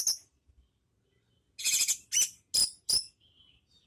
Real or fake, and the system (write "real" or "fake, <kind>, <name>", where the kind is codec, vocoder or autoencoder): real